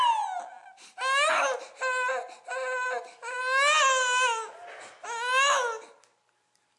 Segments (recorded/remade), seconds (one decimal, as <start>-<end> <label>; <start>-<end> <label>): 0.0-6.8 recorded